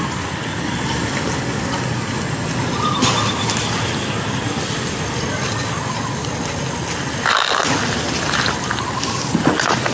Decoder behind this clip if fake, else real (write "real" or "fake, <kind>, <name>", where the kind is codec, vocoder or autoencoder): real